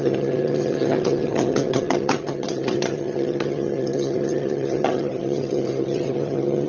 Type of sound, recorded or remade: remade